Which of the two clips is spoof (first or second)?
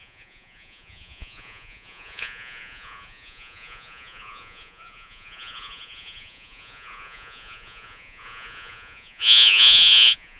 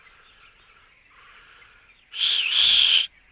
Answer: first